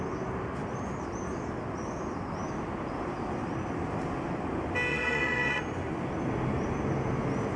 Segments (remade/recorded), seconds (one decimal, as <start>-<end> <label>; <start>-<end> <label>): 0.0-4.9 recorded; 4.9-5.6 remade; 5.6-7.6 recorded

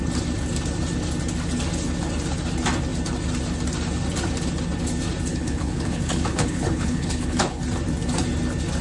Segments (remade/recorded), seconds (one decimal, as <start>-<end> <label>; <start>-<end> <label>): 0.0-5.3 recorded; 5.3-7.6 remade; 7.6-8.8 recorded

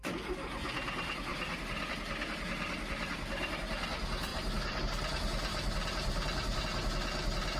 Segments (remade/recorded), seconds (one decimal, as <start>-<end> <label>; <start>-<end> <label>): 0.0-4.3 recorded; 4.3-4.8 remade; 4.8-5.5 recorded; 5.5-6.6 remade; 6.6-7.6 recorded

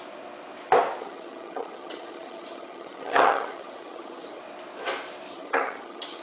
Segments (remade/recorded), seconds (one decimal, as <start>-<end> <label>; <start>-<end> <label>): 0.0-1.0 recorded; 1.0-4.4 remade; 4.4-5.3 recorded; 5.3-6.2 remade

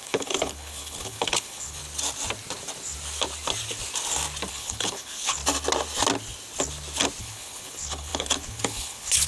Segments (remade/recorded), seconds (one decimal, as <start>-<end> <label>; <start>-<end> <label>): 0.0-1.8 remade; 1.8-4.5 recorded; 4.5-5.4 remade; 5.4-7.2 recorded; 7.2-9.3 remade